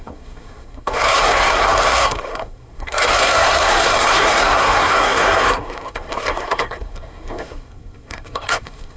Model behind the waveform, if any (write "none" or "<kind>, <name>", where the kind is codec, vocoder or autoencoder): codec, SNAC